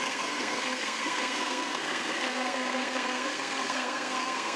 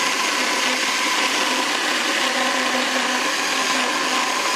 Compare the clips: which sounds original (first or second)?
second